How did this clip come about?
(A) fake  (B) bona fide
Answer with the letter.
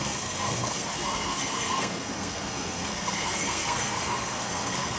A